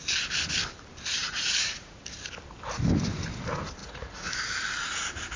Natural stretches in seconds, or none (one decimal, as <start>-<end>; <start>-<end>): 0.0-1.2; 2.0-3.8; 4.3-5.4